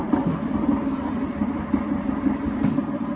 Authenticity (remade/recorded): recorded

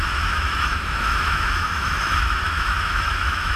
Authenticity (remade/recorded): remade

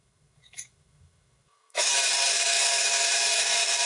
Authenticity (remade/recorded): remade